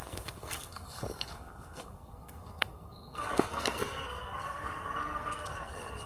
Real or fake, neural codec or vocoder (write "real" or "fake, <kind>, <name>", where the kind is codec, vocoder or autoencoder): fake, codec, SNAC